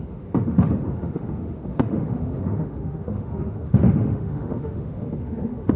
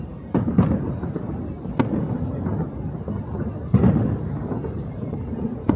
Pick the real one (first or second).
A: second